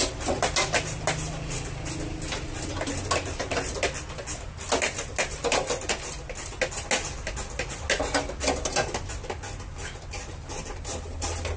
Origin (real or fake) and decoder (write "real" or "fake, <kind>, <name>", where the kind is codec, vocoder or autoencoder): real